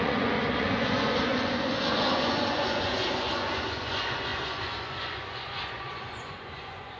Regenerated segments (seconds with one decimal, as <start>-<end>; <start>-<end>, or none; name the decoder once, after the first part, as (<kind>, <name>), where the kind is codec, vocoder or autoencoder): 0.0-7.0 (vocoder, Vocos)